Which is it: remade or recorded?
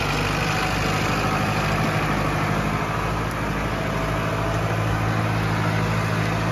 recorded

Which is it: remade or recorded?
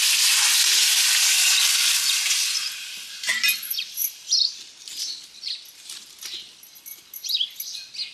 recorded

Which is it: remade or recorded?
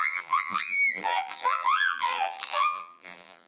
remade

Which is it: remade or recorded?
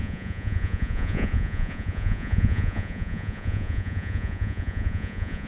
remade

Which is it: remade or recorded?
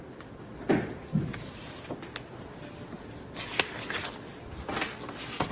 recorded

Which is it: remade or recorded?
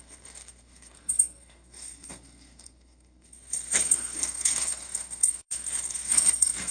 remade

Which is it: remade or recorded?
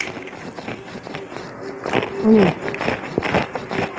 recorded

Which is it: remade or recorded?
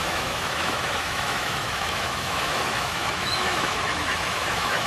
remade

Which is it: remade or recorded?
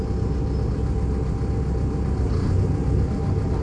recorded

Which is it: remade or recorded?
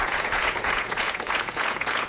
remade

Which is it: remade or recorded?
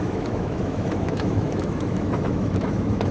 remade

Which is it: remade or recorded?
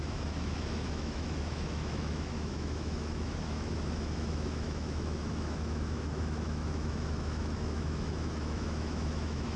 remade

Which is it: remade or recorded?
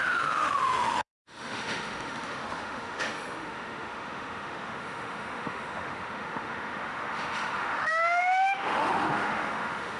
remade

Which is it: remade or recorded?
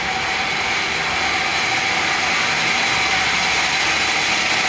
recorded